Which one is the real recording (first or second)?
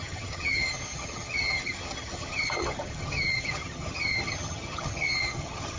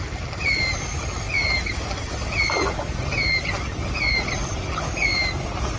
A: second